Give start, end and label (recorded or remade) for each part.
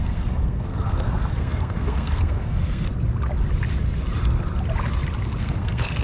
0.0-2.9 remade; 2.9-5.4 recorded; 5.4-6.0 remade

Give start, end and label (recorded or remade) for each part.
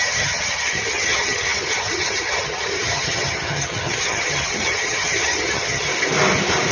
0.0-5.9 remade; 5.9-6.7 recorded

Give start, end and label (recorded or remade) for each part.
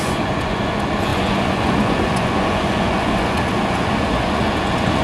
0.0-5.0 remade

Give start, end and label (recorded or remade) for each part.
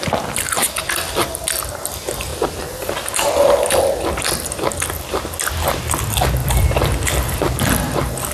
0.0-6.4 recorded; 6.4-7.5 remade; 7.5-8.3 recorded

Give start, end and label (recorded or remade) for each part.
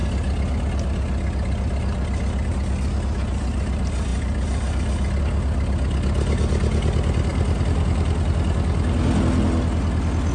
0.0-7.3 recorded; 7.3-8.3 remade; 8.3-10.3 recorded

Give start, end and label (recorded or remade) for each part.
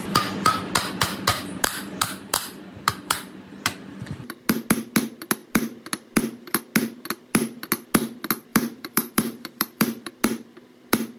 0.0-1.3 recorded; 1.3-3.8 remade; 3.8-8.5 recorded; 8.5-10.1 remade; 10.1-11.2 recorded